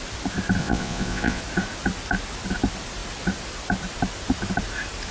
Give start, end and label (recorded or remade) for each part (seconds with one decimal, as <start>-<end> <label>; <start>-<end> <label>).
0.0-0.6 recorded; 0.6-1.4 remade; 1.4-5.1 recorded